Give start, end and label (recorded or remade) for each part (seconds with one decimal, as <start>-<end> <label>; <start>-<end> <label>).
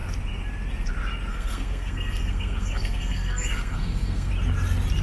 0.0-1.3 recorded; 1.3-4.3 remade; 4.3-5.0 recorded